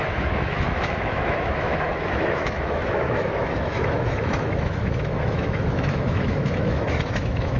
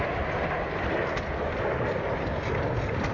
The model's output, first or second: first